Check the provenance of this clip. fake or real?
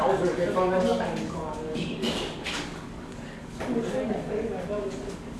fake